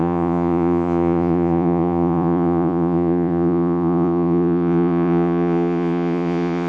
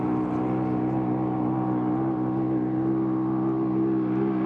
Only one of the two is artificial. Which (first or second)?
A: first